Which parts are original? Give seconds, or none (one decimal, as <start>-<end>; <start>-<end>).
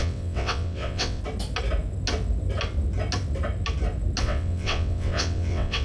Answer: 1.2-4.2